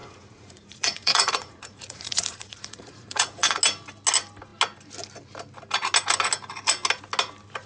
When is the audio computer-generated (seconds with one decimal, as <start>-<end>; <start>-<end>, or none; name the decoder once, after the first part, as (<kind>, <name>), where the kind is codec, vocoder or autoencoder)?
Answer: 0.0-3.6 (vocoder, Vocos)